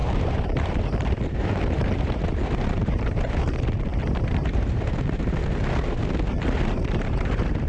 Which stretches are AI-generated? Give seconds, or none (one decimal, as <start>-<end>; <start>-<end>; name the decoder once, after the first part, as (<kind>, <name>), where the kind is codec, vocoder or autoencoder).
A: 0.0-5.4 (vocoder, BigVGAN v2); 6.4-7.7